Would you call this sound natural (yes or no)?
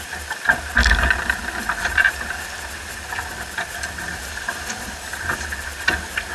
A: yes